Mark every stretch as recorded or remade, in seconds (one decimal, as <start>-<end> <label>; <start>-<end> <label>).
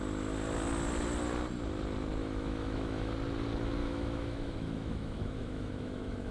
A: 0.0-2.2 recorded; 2.2-3.1 remade; 3.1-3.8 recorded; 3.8-6.3 remade